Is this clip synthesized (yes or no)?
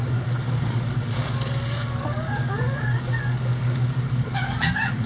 yes